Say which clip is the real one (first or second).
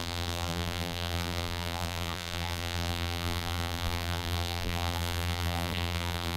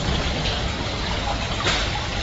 second